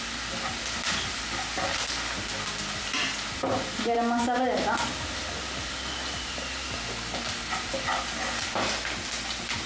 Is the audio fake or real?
real